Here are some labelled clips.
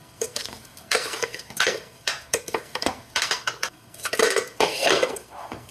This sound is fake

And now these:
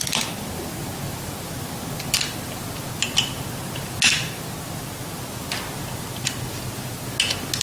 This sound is real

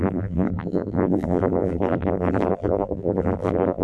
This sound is fake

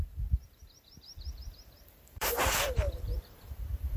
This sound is fake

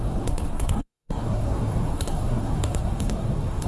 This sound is fake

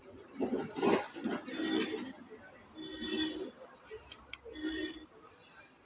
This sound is real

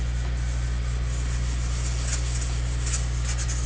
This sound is real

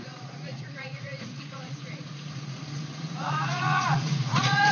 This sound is fake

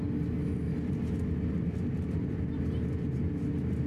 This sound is real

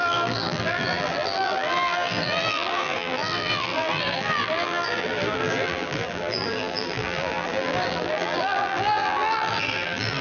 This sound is fake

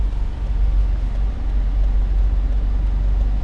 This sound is real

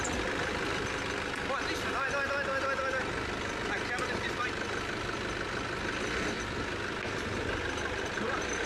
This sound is real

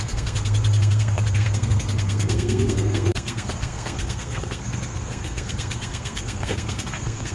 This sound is fake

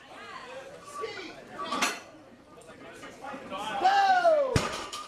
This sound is fake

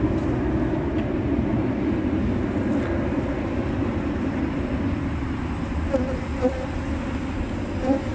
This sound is real